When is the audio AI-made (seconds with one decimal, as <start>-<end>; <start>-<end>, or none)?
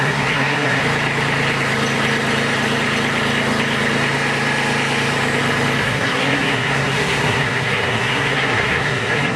0.0-0.8; 5.8-9.4